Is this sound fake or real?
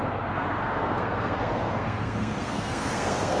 fake